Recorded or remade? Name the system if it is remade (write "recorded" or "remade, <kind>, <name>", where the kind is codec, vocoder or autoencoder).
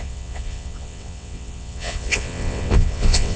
remade, vocoder, WaveNeXt